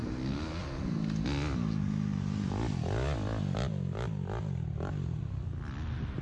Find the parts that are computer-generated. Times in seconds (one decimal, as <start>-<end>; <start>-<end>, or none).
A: none